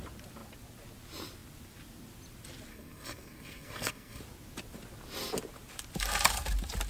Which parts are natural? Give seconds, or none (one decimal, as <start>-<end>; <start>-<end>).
0.0-2.7; 4.2-6.9